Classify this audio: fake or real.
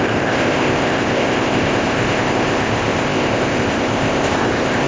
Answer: fake